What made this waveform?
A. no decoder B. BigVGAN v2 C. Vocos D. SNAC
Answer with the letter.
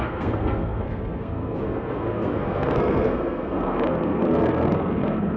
D